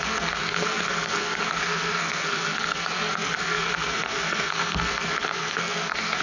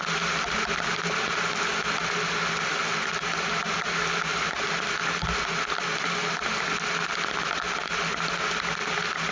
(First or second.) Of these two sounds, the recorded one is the second